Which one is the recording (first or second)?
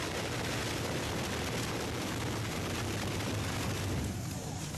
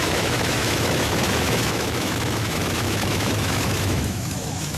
first